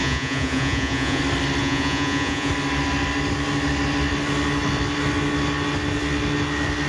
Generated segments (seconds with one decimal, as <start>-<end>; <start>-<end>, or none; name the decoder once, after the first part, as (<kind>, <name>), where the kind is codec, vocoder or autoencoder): 0.0-1.2 (vocoder, Vocos); 1.6-2.5